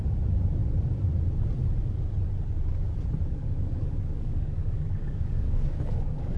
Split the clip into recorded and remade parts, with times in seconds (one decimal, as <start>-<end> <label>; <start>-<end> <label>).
0.0-3.3 recorded; 3.3-6.4 remade